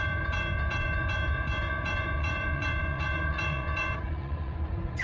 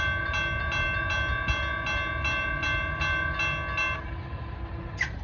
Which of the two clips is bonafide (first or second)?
second